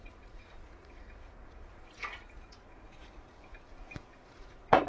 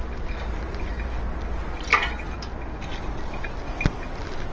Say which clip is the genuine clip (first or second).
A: second